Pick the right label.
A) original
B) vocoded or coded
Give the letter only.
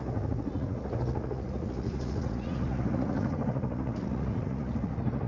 B